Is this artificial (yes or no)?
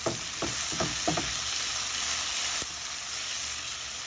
no